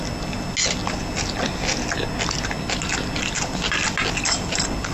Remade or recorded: recorded